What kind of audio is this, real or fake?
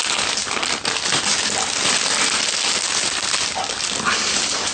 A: real